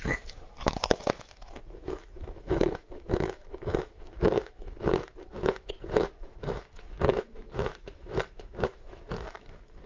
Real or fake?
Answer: fake